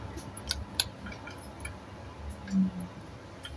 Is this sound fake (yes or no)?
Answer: no